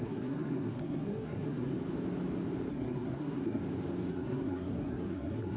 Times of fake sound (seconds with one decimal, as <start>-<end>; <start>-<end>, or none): 0.0-1.7; 2.7-3.6; 4.1-5.6